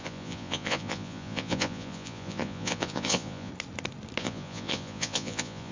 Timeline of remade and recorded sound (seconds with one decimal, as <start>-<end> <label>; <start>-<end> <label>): 0.0-3.5 remade; 3.5-4.2 recorded; 4.2-5.7 remade